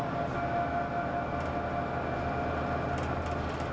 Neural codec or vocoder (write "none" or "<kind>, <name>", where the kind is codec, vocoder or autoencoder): none